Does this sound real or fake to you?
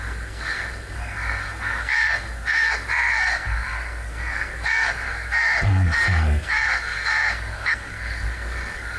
fake